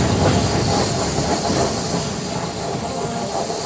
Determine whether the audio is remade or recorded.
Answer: recorded